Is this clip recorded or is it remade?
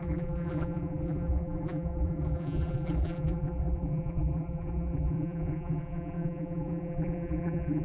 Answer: remade